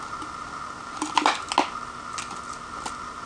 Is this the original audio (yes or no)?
yes